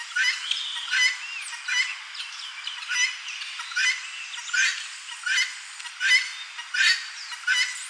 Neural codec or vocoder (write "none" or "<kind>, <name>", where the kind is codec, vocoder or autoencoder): none